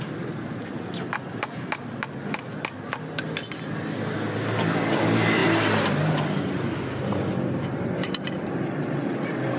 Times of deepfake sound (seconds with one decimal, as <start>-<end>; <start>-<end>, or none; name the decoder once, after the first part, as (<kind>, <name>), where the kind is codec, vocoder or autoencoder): none